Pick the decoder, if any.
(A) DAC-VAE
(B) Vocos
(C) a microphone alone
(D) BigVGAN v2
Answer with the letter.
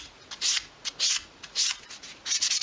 B